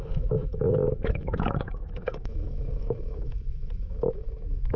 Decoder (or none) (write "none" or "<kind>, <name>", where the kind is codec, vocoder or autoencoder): autoencoder, DAC-VAE